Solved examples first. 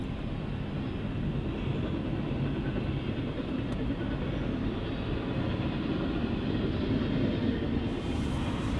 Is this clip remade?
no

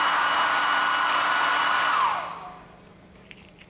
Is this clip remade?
no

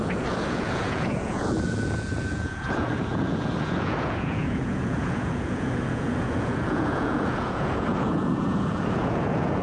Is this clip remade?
yes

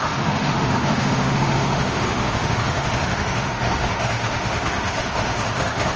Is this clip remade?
yes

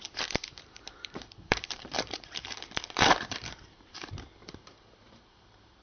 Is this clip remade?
yes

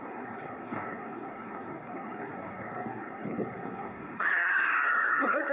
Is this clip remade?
yes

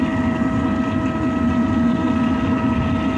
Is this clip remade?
no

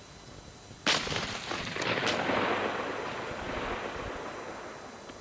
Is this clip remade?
no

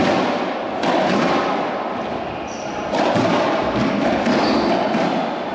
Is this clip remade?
no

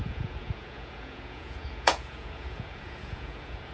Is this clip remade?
yes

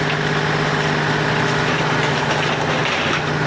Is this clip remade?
no